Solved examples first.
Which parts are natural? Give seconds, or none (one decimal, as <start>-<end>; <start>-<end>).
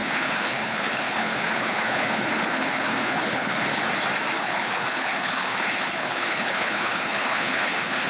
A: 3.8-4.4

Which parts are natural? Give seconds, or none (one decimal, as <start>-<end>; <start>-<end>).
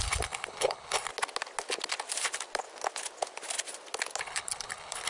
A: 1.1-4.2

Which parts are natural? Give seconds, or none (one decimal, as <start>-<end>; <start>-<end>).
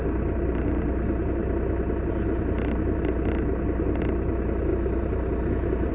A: 0.0-5.9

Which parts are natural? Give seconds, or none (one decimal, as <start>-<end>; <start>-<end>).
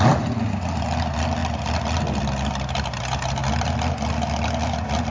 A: 0.0-5.1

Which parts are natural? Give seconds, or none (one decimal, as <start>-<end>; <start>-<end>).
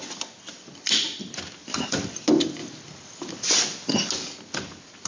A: 0.0-5.1